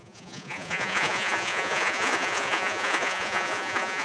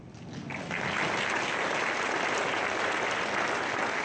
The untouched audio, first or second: second